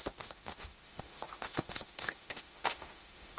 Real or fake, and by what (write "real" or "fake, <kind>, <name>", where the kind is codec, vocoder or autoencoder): fake, autoencoder, DAC-VAE